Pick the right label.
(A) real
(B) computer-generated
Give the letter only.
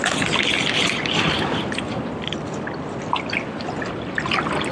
A